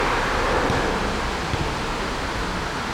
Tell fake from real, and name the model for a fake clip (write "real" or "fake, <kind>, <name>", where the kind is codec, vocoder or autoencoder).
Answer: real